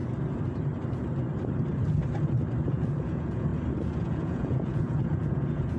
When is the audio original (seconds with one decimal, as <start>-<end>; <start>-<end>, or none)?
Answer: 0.0-2.7; 3.5-4.0